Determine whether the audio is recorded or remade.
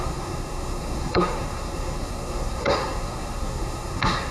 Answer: remade